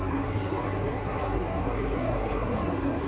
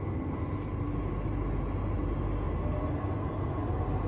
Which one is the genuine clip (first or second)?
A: second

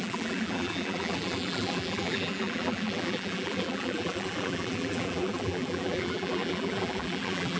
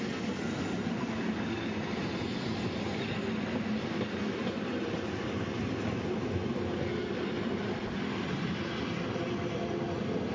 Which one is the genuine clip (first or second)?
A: second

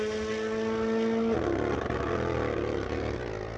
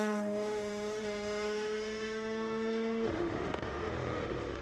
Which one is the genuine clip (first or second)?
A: first